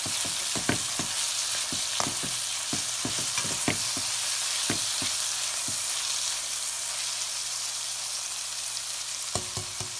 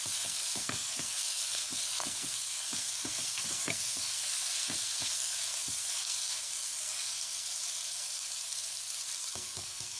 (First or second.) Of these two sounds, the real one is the first